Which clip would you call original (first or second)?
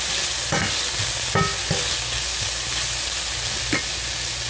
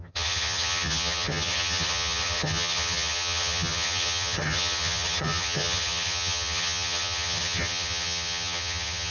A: first